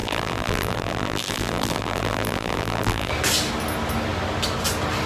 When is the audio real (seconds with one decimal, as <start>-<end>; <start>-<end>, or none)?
3.1-5.1